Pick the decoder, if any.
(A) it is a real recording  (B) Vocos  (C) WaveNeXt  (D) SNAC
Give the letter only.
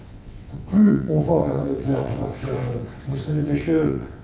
C